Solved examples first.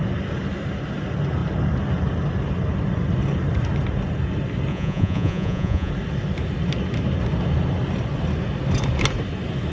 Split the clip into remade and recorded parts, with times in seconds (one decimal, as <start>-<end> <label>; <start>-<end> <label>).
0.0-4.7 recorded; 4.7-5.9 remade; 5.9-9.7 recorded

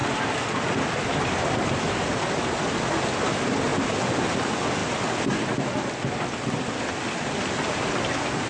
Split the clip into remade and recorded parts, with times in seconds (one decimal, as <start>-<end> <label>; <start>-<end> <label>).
0.0-8.5 recorded

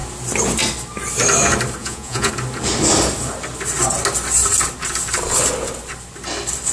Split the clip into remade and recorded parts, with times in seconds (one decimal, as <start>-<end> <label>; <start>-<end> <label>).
0.0-1.8 recorded; 1.8-2.3 remade; 2.3-6.7 recorded

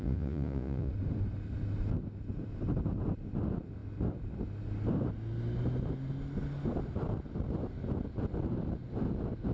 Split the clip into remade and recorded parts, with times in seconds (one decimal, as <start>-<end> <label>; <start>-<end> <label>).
0.0-0.9 remade; 0.9-9.5 recorded